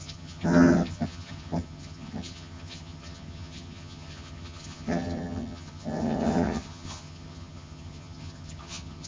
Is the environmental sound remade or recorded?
remade